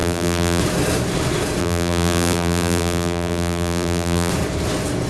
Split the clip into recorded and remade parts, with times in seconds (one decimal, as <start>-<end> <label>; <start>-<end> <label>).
0.0-0.6 remade; 0.6-1.6 recorded; 1.6-4.3 remade; 4.3-5.1 recorded